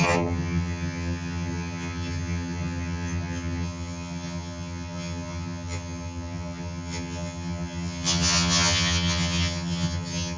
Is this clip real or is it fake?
fake